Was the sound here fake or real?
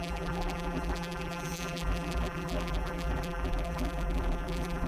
fake